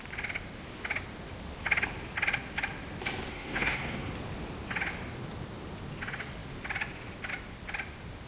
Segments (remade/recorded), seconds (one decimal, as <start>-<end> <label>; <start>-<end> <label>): 0.0-3.3 recorded; 3.3-4.1 remade; 4.1-8.3 recorded